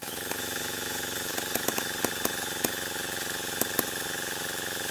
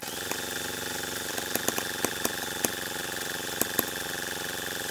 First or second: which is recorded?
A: second